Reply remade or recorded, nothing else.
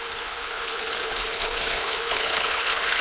remade